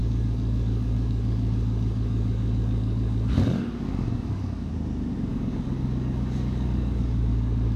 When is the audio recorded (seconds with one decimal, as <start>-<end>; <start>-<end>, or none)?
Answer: 4.7-5.3